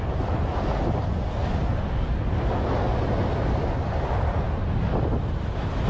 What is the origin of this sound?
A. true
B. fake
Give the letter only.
A